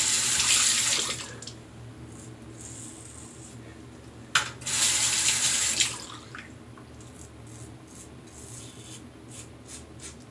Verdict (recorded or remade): recorded